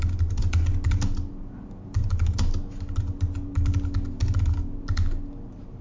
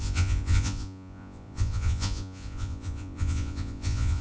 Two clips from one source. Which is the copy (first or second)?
second